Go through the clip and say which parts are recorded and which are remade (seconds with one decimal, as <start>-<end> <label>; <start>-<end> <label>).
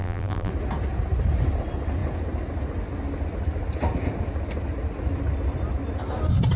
0.0-0.5 remade; 0.5-6.6 recorded